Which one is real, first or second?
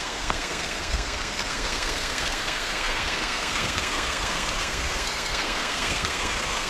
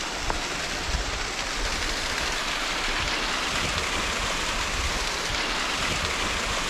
second